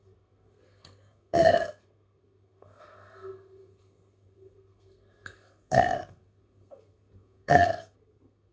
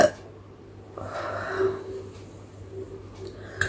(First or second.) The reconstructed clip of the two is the first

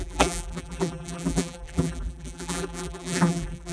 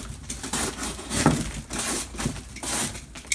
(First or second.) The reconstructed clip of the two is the first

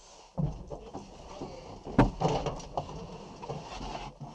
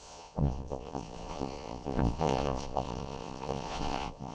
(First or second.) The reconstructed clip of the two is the second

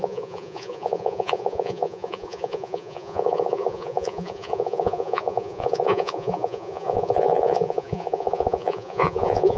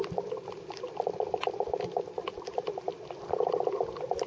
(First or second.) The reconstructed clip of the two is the first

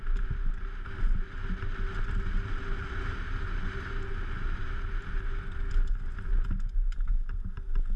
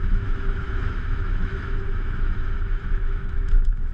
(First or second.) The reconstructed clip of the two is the second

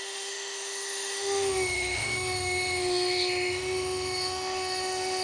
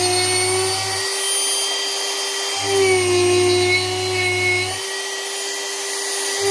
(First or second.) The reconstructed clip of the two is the first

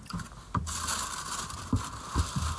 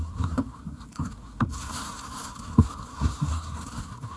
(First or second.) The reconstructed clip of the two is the second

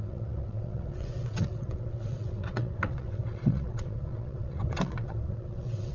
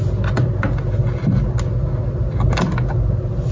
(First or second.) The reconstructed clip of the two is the first